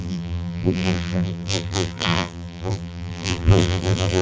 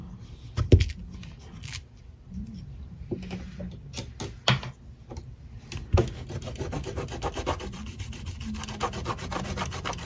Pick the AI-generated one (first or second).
first